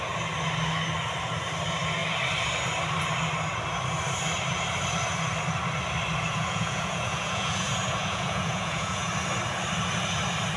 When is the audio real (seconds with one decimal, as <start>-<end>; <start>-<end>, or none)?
0.0-6.3; 9.1-10.6